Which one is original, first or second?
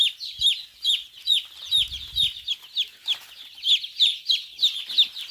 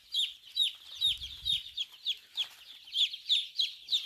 first